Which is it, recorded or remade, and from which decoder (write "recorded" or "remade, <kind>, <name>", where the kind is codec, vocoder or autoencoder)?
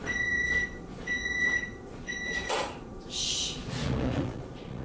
remade, vocoder, Vocos